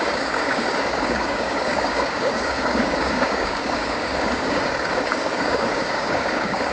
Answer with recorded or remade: remade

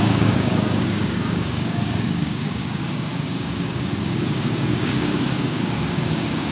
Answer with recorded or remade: remade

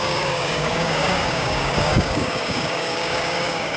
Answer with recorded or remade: remade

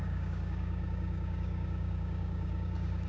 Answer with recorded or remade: remade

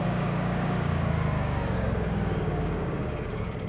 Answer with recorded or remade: remade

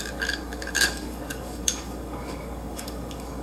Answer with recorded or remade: remade